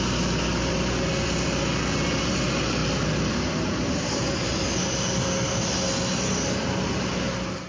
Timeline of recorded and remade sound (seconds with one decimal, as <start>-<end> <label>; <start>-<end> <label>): 0.0-7.7 recorded